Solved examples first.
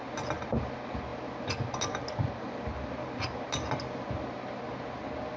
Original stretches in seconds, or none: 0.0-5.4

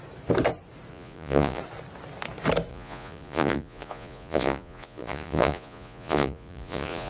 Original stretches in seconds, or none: 0.0-0.9; 1.6-2.7

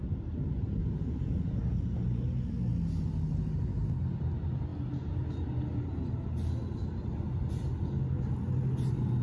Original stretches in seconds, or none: 0.0-0.8; 1.8-9.2

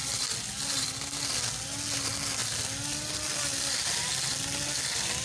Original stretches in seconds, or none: 0.0-5.2

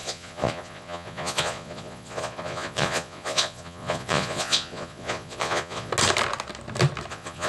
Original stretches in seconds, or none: 5.9-7.1

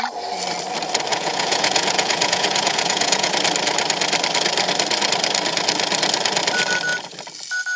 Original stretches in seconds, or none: 0.0-1.1; 3.3-7.8